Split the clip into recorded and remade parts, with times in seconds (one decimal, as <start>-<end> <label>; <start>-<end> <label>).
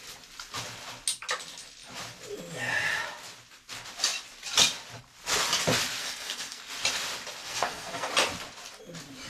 0.0-6.0 recorded; 6.0-6.6 remade; 6.6-7.4 recorded; 7.4-8.1 remade; 8.1-9.3 recorded